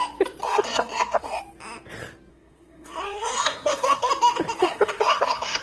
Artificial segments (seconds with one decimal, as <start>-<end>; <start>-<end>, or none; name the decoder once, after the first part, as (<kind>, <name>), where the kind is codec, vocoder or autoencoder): 0.4-1.4 (codec, SNAC); 2.3-4.1; 4.6-5.6